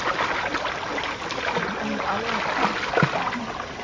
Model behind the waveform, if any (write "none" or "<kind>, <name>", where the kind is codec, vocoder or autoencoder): vocoder, BigVGAN v2